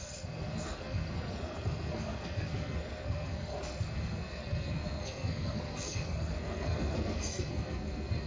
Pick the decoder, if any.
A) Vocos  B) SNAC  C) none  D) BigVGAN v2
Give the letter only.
B